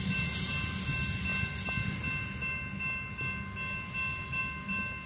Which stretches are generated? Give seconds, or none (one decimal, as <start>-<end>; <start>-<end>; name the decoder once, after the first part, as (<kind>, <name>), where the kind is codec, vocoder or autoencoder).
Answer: none